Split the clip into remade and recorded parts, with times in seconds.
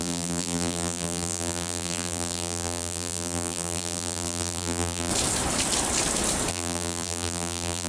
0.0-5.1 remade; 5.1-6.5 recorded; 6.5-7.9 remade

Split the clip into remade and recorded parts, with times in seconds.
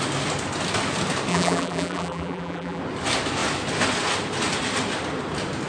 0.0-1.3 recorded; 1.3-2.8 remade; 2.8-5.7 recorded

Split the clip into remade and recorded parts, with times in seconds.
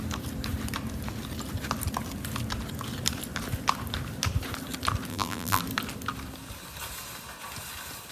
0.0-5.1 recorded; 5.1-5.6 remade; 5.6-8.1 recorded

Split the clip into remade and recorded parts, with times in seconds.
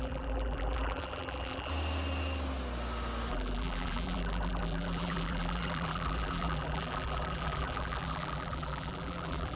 0.0-1.7 remade; 1.7-3.3 recorded; 3.3-9.6 remade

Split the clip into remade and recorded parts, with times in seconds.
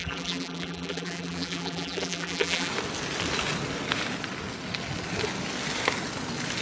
0.0-2.7 remade; 2.7-6.6 recorded